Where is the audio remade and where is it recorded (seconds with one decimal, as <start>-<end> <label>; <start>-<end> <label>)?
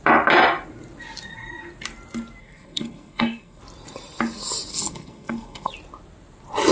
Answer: 0.0-2.4 recorded; 2.4-3.6 remade; 3.6-4.7 recorded; 4.7-5.7 remade; 5.7-6.7 recorded